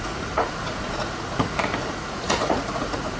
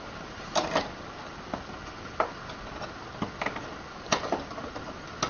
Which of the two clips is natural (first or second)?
second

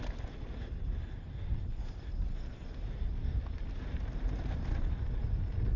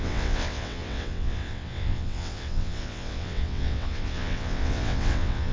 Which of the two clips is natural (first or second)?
first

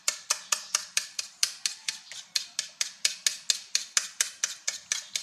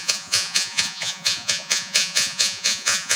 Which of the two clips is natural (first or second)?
first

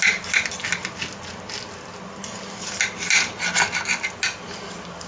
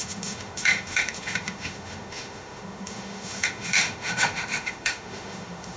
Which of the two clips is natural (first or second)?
first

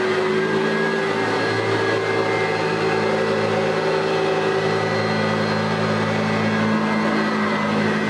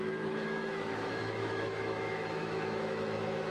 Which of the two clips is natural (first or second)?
first